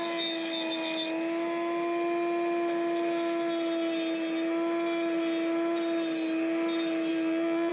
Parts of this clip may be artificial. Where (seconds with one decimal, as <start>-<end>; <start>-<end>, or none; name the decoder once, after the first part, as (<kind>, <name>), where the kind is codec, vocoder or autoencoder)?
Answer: 7.1-7.7 (vocoder, BigVGAN v2)